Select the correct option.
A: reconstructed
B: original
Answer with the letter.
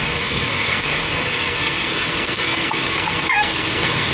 A